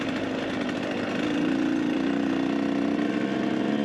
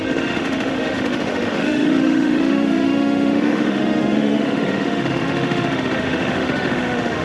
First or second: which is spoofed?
second